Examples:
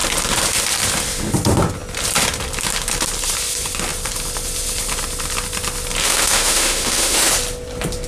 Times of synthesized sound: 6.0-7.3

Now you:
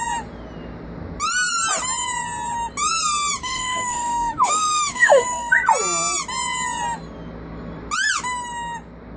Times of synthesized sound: 3.4-5.5